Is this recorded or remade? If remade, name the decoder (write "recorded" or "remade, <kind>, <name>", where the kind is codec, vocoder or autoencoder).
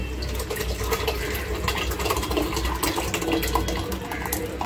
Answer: recorded